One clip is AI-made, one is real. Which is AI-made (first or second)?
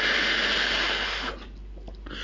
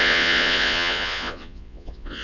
second